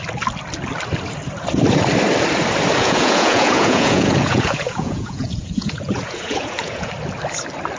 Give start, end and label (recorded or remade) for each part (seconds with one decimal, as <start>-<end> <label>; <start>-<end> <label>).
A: 0.0-2.8 recorded; 2.8-6.9 remade; 6.9-7.8 recorded